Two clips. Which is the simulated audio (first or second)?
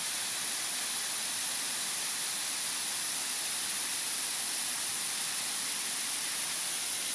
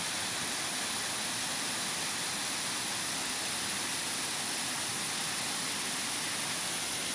first